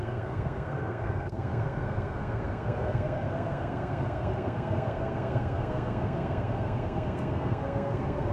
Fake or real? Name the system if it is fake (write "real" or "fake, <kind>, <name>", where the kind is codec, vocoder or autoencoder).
fake, codec, SNAC